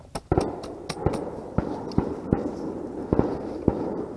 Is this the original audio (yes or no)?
yes